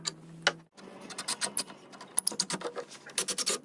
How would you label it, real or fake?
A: real